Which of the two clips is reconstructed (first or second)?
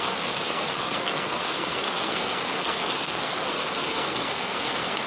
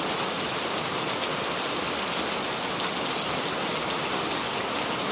first